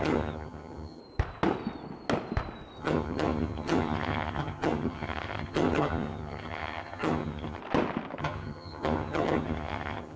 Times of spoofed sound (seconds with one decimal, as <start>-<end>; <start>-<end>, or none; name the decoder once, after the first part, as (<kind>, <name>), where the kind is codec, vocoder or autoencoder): 0.0-1.0 (vocoder, HiFi-GAN); 2.8-7.6; 8.2-10.2